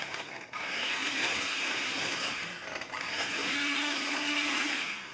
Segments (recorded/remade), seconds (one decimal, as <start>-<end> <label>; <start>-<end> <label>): 0.0-2.4 remade; 2.4-3.0 recorded; 3.0-5.1 remade